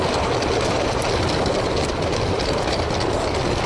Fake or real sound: real